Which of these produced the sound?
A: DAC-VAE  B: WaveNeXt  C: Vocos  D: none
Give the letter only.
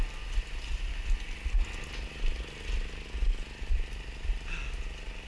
D